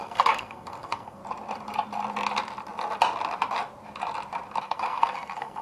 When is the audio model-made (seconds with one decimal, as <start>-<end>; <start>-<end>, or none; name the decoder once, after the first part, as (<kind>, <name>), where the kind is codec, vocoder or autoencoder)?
0.0-1.2 (codec, SNAC); 4.6-5.6

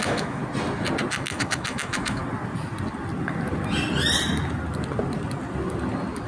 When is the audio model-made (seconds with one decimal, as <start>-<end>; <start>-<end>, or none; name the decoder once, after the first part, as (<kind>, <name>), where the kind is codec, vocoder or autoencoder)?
0.0-0.4 (autoencoder, DAC-VAE); 1.1-2.2

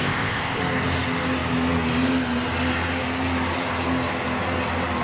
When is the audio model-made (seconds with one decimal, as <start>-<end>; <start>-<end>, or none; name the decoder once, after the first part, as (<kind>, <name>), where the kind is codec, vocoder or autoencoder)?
0.0-0.6 (codec, ZipCodec)

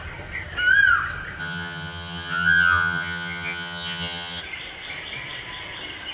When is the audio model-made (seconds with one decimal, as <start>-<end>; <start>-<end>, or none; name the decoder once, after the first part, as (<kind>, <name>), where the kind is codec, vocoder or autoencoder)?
1.4-4.4 (vocoder, HiFi-GAN)

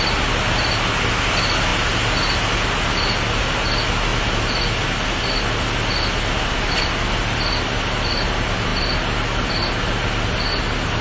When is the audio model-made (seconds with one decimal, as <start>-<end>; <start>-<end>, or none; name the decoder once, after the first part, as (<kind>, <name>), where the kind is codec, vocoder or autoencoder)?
none